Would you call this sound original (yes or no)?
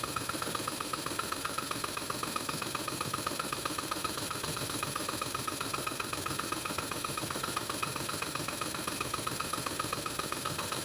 no